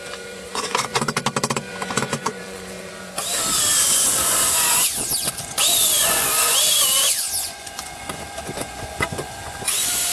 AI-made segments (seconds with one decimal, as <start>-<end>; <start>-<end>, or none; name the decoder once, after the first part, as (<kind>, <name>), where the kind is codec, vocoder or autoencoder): 0.0-1.2 (vocoder, Vocos); 1.7-3.2; 3.8-10.1